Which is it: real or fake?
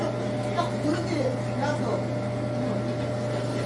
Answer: real